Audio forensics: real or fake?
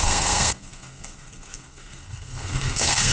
fake